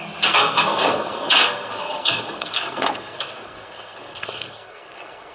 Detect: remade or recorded remade